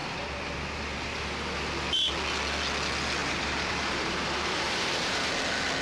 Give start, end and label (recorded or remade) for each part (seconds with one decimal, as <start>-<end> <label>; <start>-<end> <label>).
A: 0.0-3.2 recorded; 3.2-5.3 remade; 5.3-5.8 recorded